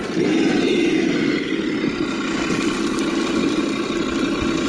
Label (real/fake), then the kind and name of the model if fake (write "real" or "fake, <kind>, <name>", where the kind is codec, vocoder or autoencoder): real